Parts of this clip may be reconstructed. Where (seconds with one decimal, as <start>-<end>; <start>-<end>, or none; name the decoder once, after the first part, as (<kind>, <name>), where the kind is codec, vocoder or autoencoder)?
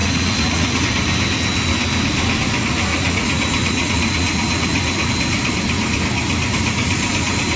0.0-0.8 (vocoder, Vocos); 2.9-5.1